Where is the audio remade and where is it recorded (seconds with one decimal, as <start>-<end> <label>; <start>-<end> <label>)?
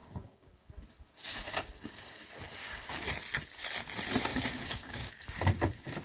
0.0-0.7 remade; 0.7-2.6 recorded; 2.6-3.1 remade; 3.1-4.3 recorded; 4.3-5.1 remade; 5.1-6.0 recorded